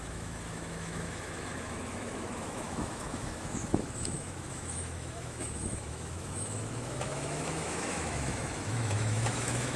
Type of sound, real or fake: fake